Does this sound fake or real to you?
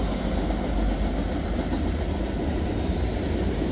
real